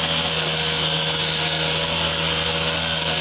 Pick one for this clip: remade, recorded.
remade